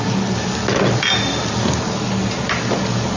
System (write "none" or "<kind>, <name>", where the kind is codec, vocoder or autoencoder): none